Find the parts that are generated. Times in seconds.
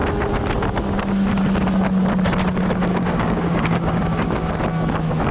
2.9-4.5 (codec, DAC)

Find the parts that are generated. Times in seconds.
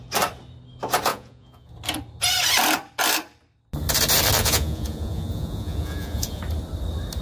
1.1-1.7 (vocoder, Vocos); 4.4-6.4